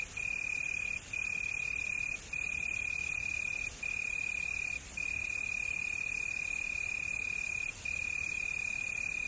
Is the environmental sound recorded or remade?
remade